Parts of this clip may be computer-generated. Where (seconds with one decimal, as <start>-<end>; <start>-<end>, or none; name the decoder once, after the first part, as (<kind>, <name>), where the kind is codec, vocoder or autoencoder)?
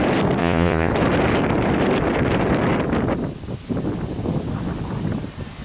0.4-0.9 (vocoder, Vocos)